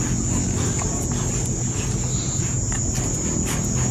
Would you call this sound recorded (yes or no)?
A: yes